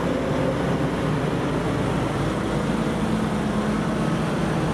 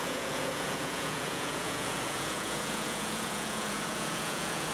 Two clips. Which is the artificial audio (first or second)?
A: second